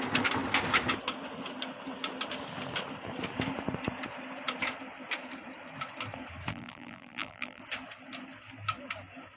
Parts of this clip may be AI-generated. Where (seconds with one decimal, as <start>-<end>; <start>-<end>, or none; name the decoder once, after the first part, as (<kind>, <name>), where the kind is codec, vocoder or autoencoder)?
6.5-7.6 (vocoder, BigVGAN v2)